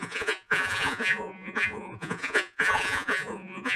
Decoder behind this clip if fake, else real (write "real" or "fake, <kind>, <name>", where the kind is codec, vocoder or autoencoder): fake, vocoder, Vocos